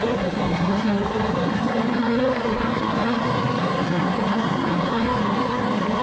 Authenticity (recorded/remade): remade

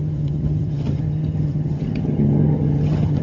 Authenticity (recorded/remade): remade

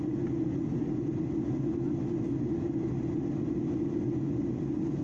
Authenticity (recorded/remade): recorded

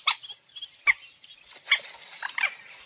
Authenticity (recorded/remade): recorded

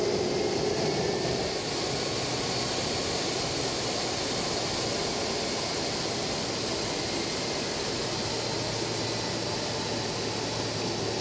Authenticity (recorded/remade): recorded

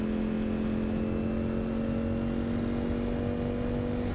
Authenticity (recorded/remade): recorded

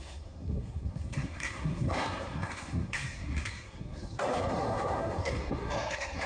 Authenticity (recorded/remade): remade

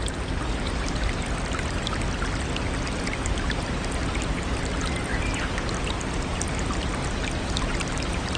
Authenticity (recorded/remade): recorded